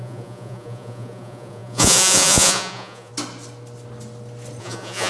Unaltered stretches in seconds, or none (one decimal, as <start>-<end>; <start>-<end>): 3.1-4.6